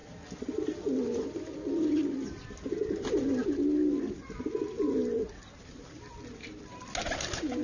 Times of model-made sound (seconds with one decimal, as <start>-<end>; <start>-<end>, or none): none